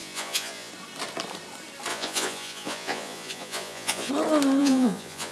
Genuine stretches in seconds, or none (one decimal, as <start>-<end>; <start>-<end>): 0.7-1.9; 4.1-4.6